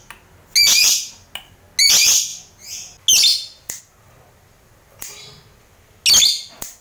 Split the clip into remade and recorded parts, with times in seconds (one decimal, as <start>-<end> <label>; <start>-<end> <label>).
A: 0.0-6.8 recorded